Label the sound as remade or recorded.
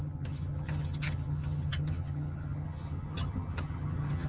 remade